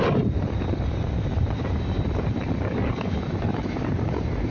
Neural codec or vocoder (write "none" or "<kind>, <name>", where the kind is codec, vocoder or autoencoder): vocoder, BigVGAN v2